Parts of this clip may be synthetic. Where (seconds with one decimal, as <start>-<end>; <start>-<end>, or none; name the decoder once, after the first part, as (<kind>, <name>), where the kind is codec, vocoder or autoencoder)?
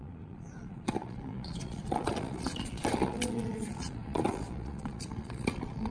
0.0-5.9 (vocoder, Vocos)